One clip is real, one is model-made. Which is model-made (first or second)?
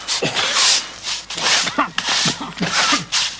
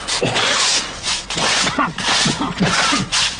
second